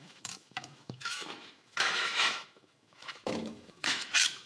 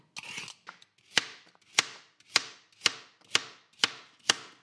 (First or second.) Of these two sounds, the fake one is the first